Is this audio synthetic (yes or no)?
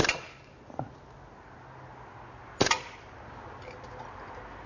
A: no